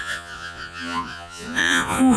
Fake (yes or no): yes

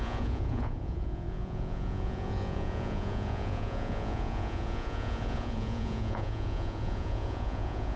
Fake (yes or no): yes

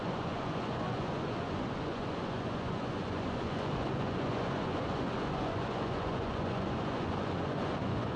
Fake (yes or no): yes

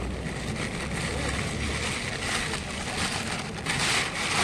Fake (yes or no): no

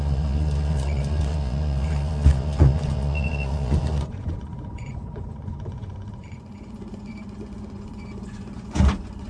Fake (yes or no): yes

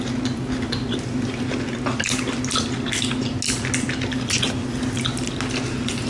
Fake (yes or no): no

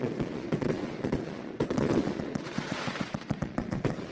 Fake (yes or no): yes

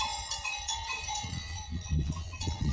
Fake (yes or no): yes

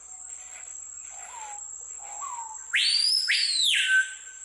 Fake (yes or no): no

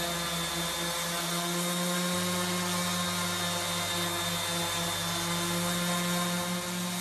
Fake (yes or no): no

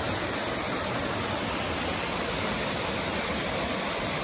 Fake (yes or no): no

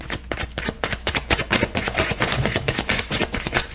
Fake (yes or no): yes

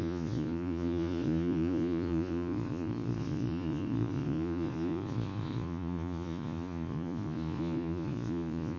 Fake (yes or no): yes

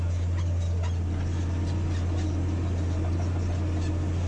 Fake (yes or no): no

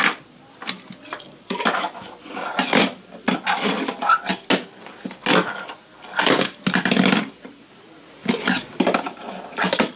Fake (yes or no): no